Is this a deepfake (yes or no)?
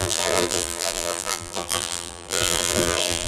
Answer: yes